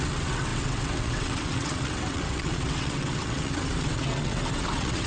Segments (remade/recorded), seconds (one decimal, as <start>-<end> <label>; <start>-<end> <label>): 0.0-5.1 remade